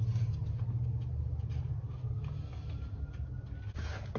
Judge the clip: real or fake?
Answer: real